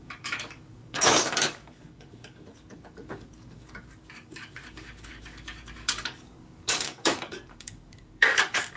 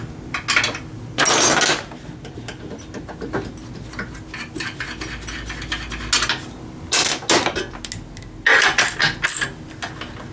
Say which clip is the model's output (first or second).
first